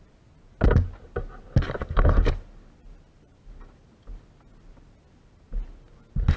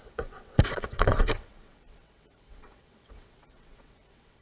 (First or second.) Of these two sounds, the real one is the first